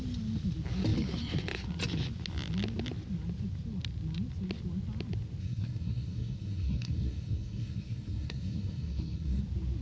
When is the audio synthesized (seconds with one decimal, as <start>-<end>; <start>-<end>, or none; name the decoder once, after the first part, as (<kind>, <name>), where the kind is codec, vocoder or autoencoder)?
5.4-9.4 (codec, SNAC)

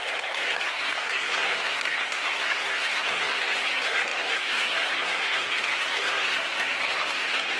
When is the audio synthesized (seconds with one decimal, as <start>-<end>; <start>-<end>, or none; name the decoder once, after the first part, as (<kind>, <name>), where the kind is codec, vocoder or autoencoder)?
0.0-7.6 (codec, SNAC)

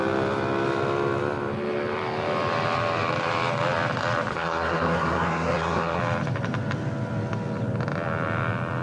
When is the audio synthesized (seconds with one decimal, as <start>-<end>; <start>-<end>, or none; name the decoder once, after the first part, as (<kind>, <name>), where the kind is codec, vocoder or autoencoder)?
4.3-6.0 (codec, SNAC)

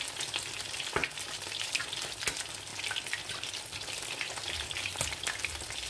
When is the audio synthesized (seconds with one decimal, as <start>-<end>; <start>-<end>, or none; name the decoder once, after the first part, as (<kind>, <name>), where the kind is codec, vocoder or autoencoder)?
none